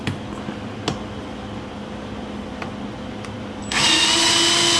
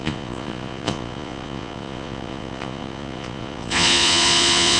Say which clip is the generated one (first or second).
second